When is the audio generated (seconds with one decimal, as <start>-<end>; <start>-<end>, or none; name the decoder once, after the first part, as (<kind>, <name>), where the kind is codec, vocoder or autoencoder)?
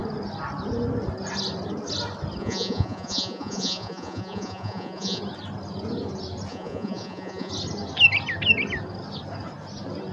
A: 2.4-5.2 (vocoder, Vocos); 6.5-7.5